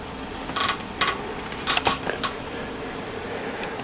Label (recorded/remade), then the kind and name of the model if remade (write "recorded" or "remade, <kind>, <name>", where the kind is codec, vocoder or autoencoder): recorded